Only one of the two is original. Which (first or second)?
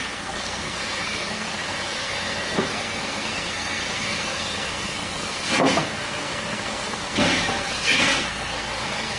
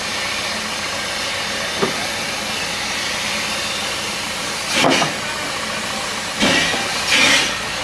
second